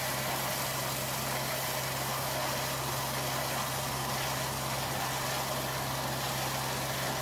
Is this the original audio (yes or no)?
yes